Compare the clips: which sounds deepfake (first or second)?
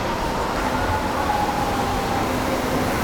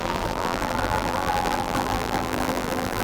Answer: second